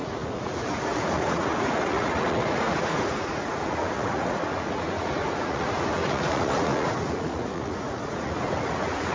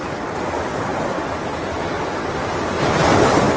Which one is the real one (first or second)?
second